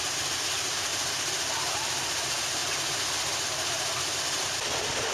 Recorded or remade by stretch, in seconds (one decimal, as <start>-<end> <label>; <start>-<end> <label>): 0.0-0.9 remade; 0.9-1.7 recorded; 1.7-2.6 remade; 2.6-5.1 recorded